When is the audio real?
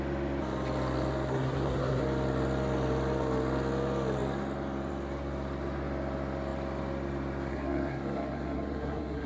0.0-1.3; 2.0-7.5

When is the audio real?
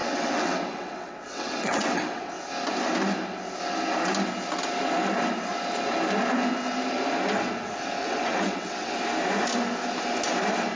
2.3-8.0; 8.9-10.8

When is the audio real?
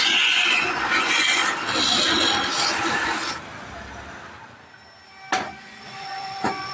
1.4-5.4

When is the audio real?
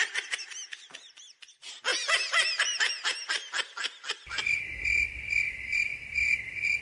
0.0-6.8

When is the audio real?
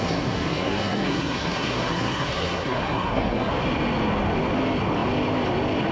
3.5-5.9